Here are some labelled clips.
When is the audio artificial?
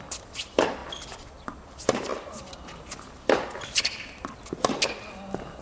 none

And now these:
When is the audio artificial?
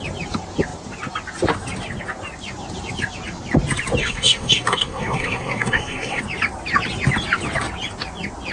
4.0-6.2 (codec, SNAC)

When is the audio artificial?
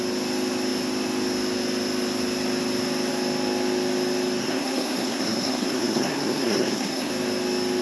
4.4-7.1 (codec, SNAC)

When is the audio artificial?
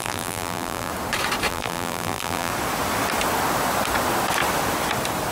0.0-0.9 (vocoder, BigVGAN v2); 1.5-2.5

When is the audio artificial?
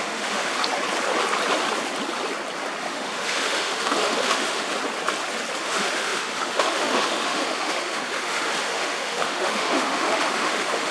0.0-0.6 (autoencoder, DAC-VAE); 2.8-4.7; 5.6-10.9